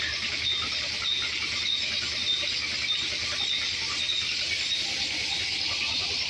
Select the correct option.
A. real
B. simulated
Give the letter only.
A